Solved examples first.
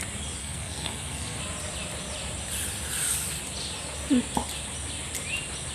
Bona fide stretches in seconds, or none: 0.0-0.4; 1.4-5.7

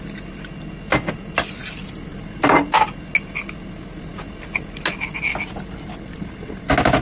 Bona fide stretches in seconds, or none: 0.0-7.0

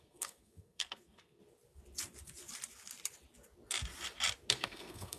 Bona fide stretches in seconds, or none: 1.4-4.5

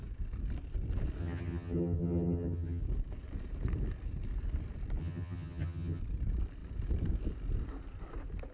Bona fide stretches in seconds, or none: 0.0-1.2; 2.8-5.0; 6.0-8.5

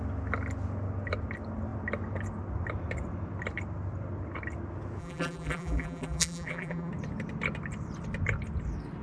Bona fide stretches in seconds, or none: 0.0-5.0; 6.9-9.0

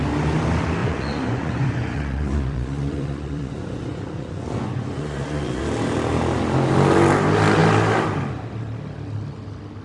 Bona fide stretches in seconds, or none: 0.0-0.8; 5.6-9.8